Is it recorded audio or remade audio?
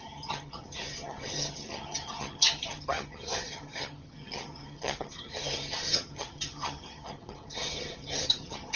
remade